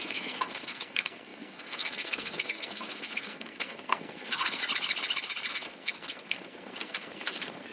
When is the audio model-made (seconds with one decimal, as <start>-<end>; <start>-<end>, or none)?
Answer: 0.0-4.6; 5.5-7.7